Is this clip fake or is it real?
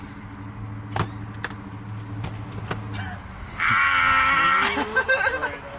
real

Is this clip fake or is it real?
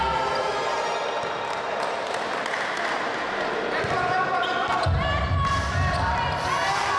real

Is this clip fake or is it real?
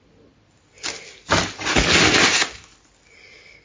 real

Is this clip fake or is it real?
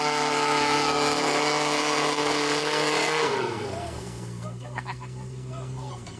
fake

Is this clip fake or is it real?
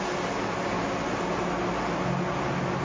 real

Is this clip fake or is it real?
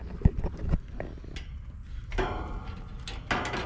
real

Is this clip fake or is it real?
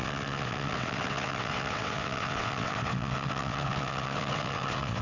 fake